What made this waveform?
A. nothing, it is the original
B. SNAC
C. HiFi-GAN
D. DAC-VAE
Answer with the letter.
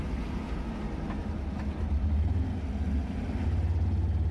A